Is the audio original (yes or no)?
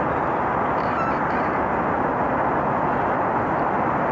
yes